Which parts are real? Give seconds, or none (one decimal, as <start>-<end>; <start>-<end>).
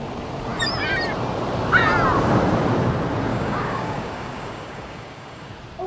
0.0-3.3; 5.5-5.9